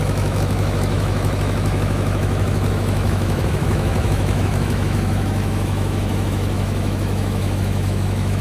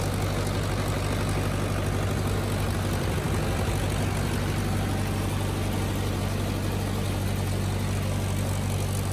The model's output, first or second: first